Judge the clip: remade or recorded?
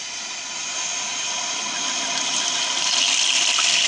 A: recorded